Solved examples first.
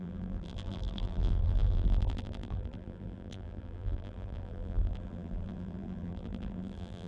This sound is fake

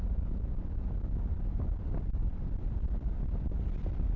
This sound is real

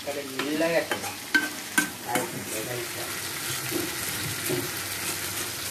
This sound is real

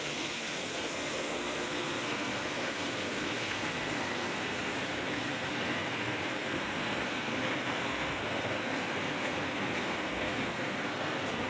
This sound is fake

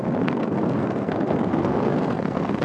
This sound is fake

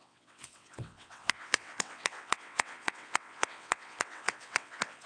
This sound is fake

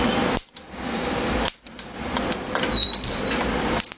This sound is fake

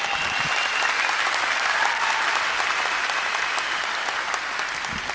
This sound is real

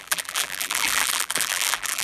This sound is fake